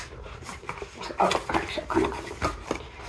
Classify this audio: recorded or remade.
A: recorded